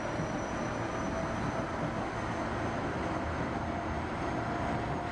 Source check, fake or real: real